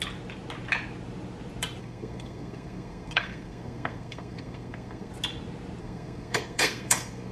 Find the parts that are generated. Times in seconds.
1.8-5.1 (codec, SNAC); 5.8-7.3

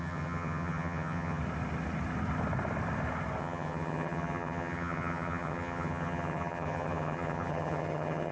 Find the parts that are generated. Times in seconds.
0.0-1.4 (vocoder, HiFi-GAN); 3.4-8.3

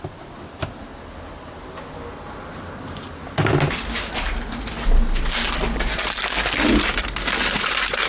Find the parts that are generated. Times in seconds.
none